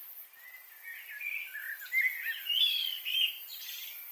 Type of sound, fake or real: real